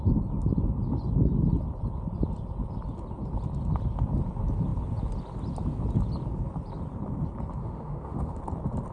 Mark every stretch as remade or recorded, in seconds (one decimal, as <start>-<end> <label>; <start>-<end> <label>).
0.0-7.6 recorded; 7.6-8.4 remade; 8.4-8.9 recorded